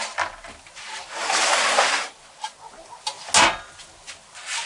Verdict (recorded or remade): recorded